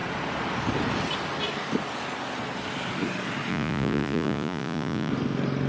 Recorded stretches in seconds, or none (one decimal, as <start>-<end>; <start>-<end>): 0.0-3.5; 5.1-5.7